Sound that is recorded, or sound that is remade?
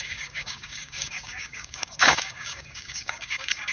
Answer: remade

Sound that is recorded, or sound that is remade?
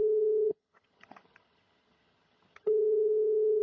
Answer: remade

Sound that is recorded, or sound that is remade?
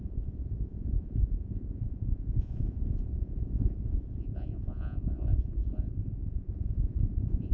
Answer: remade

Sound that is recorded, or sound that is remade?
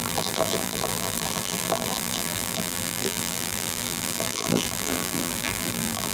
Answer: remade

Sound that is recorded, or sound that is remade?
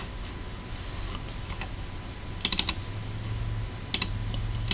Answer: recorded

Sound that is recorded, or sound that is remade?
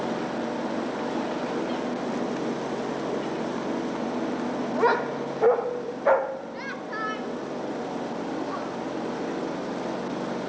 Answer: recorded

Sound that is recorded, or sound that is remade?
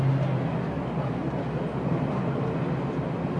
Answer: recorded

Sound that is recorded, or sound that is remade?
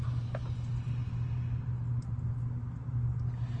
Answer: recorded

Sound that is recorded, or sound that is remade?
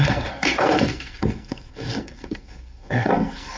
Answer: remade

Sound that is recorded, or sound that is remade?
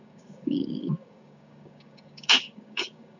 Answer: remade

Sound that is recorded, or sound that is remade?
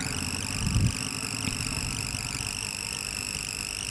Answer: recorded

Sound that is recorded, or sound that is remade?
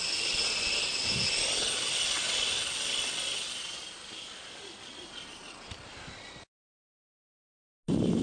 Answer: recorded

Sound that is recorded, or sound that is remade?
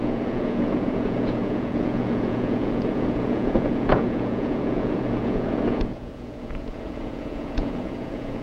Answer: remade